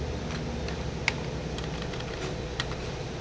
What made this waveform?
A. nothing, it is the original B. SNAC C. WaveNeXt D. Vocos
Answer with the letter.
A